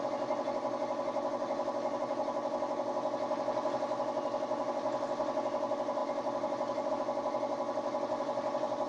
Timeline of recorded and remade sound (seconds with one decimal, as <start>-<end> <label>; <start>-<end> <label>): 0.0-8.9 recorded